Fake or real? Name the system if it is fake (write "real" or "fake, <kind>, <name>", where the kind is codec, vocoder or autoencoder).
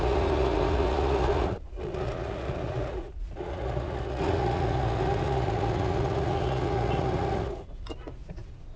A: fake, vocoder, Vocos